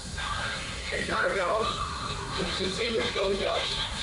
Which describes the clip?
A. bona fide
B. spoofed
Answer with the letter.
B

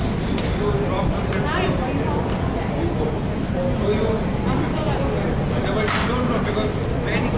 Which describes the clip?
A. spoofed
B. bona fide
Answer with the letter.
B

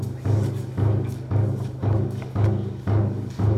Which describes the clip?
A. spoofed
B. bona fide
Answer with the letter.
A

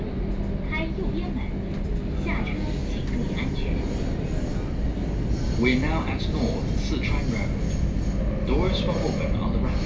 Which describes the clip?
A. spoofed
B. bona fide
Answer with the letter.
B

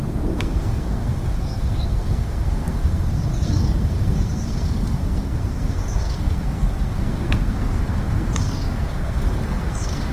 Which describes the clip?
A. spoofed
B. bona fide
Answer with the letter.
A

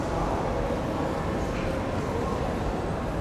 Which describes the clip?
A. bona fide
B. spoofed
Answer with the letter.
A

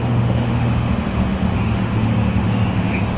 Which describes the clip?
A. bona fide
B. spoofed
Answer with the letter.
B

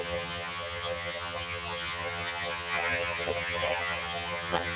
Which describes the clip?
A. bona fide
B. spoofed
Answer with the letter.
B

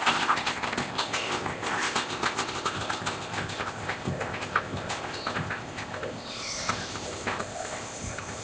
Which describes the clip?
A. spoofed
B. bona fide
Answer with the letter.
A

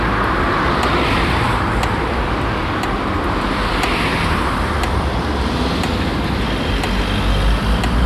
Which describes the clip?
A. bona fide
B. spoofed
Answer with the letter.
A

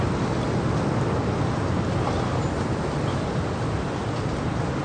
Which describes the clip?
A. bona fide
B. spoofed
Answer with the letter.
A